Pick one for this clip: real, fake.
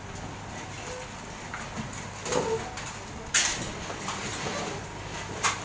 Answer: real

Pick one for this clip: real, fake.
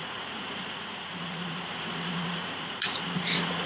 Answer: fake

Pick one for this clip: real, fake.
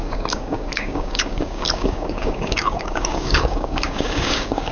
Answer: fake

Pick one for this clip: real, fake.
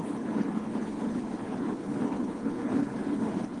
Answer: fake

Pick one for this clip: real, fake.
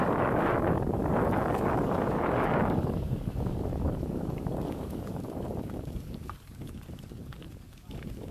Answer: fake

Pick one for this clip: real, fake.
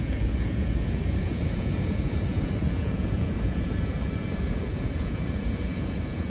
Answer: fake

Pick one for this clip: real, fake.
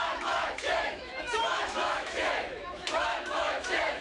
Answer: fake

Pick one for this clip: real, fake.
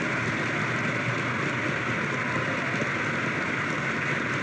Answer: real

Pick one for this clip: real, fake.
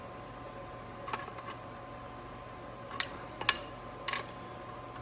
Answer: real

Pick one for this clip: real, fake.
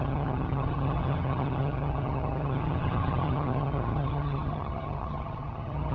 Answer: fake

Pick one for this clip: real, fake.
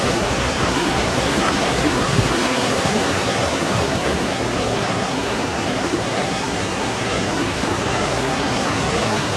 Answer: fake